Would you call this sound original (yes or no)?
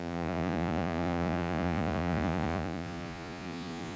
no